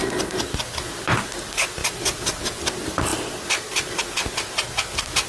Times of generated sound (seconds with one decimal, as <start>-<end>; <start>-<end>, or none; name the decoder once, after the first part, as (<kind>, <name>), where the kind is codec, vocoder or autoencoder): none